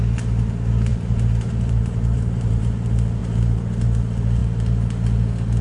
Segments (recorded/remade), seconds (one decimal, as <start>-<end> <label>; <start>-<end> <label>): 0.0-0.9 recorded; 0.9-2.6 remade; 2.6-3.2 recorded; 3.2-3.8 remade; 3.8-5.6 recorded